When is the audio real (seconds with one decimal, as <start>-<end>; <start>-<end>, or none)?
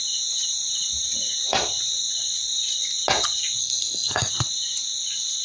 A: 0.0-3.6; 4.3-5.4